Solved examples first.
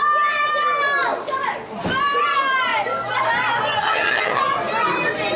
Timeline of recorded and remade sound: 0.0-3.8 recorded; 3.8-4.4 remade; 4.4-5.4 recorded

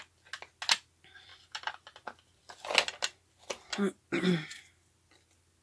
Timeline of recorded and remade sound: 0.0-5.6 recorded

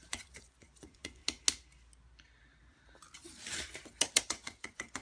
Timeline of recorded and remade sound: 0.0-1.2 remade; 1.2-4.2 recorded; 4.2-5.0 remade

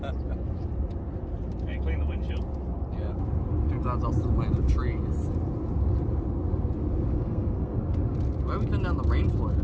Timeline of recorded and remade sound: 0.0-7.1 recorded; 7.1-7.8 remade; 7.8-9.6 recorded